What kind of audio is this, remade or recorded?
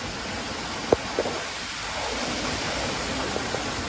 remade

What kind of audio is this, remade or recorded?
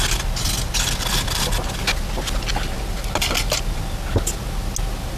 recorded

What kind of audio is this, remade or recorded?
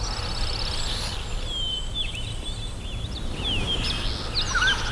recorded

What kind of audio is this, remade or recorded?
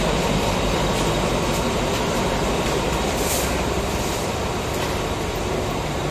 remade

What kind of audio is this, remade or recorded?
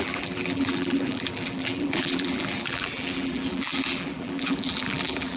remade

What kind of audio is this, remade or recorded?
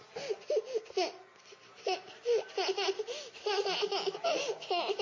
recorded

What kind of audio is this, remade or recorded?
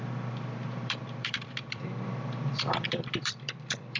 remade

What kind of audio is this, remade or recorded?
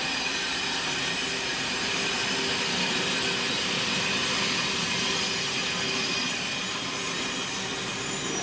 recorded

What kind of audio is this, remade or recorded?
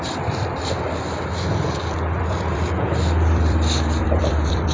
remade